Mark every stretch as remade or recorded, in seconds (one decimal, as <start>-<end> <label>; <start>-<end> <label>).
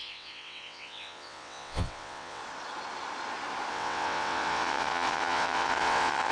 0.0-2.4 remade; 2.4-3.7 recorded; 3.7-6.3 remade